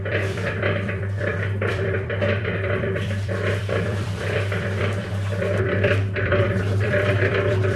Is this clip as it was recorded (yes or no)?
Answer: no